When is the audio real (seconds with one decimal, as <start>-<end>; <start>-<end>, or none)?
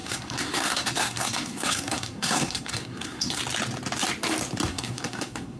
3.4-4.7